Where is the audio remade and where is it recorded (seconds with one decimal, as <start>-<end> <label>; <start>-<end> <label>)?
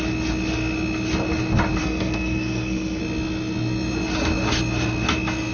0.0-1.8 recorded; 1.8-3.0 remade; 3.0-5.5 recorded